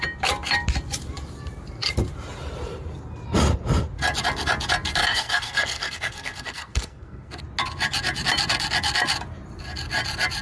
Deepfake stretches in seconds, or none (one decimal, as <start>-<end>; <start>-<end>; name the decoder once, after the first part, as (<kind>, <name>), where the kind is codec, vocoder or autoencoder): 5.0-7.4 (codec, SNAC)